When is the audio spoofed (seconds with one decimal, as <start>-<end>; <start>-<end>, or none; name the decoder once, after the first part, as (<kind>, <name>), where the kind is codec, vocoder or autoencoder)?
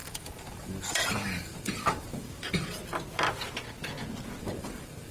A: 0.0-2.8 (vocoder, BigVGAN v2); 4.4-5.1